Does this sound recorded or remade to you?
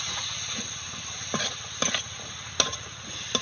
recorded